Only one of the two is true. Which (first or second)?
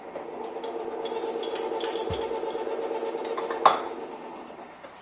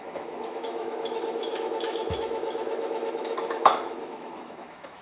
first